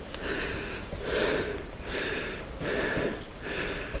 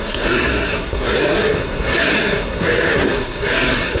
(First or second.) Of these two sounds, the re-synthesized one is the second